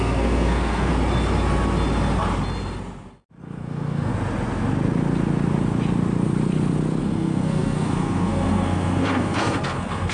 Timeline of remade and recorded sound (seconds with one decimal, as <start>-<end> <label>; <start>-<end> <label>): 0.0-0.9 remade; 0.9-3.4 recorded; 3.4-4.1 remade; 4.1-7.0 recorded; 7.0-10.1 remade